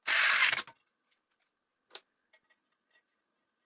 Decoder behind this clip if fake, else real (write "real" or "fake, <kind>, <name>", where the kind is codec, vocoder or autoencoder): real